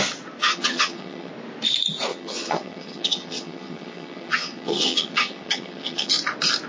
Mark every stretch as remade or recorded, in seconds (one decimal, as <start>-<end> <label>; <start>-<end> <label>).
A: 0.0-0.4 recorded; 0.4-1.3 remade; 1.3-2.1 recorded; 2.1-6.1 remade; 6.1-6.7 recorded